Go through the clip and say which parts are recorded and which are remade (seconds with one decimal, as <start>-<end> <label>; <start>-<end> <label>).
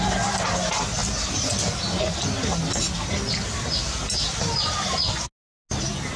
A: 0.0-6.2 recorded